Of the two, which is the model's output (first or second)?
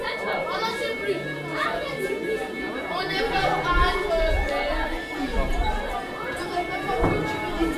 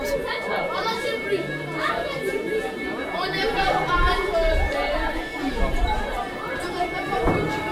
second